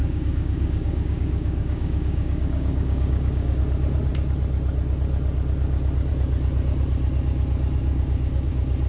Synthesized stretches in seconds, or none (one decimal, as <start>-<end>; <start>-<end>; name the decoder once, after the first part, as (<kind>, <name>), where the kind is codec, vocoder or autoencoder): 0.0-3.6 (codec, DAC); 7.8-8.5